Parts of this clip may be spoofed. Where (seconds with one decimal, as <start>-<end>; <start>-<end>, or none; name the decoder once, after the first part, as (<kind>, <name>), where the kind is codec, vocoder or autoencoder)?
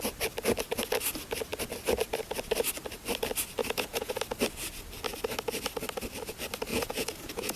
3.6-4.2 (vocoder, Vocos); 6.7-7.6